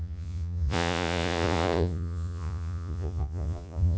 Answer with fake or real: fake